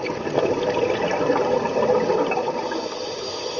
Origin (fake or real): real